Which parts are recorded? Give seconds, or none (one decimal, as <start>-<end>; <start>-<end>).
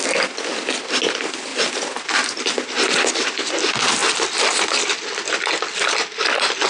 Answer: 0.0-6.7